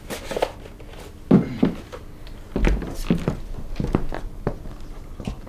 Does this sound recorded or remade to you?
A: recorded